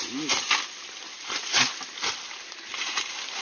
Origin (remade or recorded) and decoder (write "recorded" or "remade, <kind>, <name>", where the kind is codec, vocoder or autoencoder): recorded